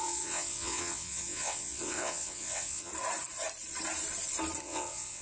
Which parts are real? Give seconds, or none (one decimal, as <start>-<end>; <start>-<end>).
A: 2.9-4.6